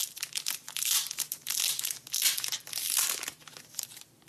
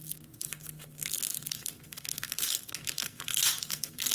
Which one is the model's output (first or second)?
second